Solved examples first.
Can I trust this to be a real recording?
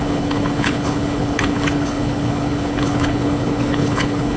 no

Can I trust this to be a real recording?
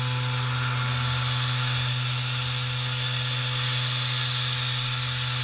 yes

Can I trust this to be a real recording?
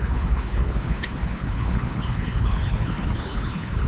no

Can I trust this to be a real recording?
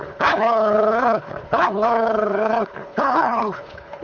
no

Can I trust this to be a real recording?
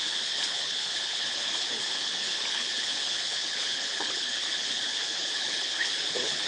no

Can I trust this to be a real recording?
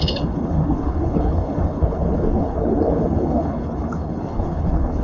no